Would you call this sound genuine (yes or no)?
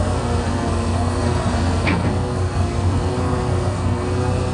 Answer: no